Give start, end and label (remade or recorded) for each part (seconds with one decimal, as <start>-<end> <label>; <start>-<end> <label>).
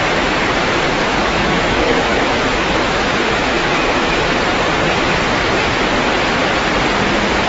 0.0-1.1 recorded; 1.1-4.3 remade; 4.3-7.5 recorded